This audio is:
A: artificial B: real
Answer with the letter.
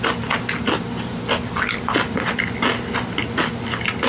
B